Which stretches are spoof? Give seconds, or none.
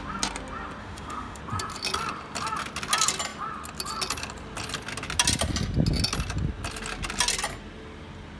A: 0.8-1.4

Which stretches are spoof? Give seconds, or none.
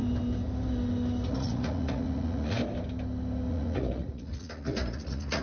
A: 1.3-2.6; 3.5-5.4